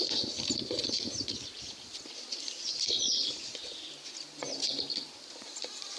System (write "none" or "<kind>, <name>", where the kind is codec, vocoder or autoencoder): none